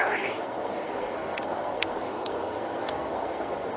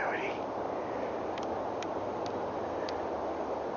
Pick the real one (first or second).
second